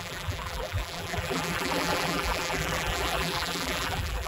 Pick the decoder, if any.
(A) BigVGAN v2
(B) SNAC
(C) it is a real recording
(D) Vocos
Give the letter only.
A